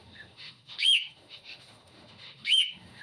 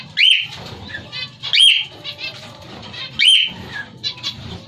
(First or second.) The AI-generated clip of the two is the first